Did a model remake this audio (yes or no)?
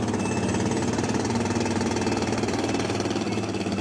no